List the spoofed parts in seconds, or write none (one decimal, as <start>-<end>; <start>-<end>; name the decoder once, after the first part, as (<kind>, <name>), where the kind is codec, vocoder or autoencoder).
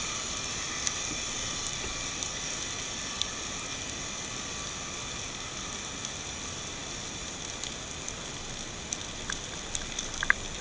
none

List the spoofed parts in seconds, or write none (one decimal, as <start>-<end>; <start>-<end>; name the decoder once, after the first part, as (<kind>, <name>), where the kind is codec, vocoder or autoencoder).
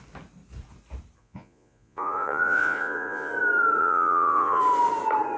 1.2-3.3 (vocoder, Vocos); 3.8-4.6